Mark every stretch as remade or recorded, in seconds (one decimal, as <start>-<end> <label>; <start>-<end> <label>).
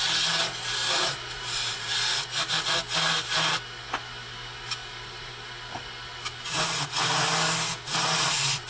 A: 0.0-0.8 recorded; 0.8-1.9 remade; 1.9-4.8 recorded; 4.8-5.3 remade; 5.3-8.7 recorded